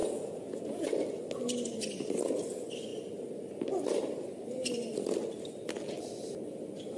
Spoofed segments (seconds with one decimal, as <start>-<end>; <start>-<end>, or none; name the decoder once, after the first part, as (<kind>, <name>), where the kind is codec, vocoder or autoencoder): 0.0-0.9 (vocoder, Vocos)